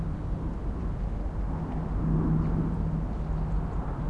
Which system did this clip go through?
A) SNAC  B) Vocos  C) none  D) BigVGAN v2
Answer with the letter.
C